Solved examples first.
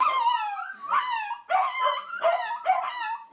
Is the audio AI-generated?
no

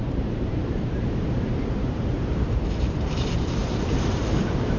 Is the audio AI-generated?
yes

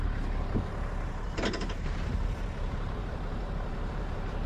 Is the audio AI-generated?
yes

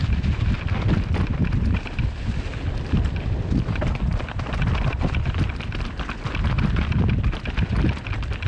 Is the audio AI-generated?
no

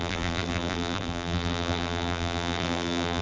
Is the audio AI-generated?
yes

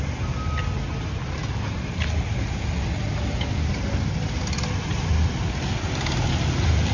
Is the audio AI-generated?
no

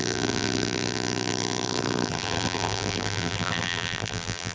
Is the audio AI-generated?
yes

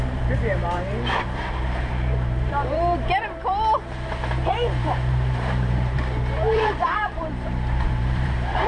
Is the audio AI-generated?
yes